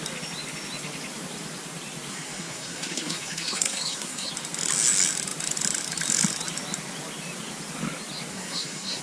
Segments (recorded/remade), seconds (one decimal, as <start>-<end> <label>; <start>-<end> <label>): 0.0-2.1 recorded; 2.1-4.3 remade; 4.3-8.3 recorded; 8.3-9.0 remade